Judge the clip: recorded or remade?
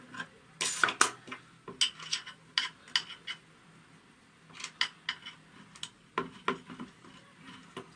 recorded